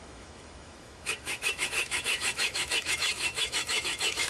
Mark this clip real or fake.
fake